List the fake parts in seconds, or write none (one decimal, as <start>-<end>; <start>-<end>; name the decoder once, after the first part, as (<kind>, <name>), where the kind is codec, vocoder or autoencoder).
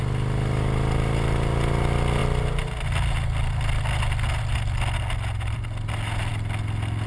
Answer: none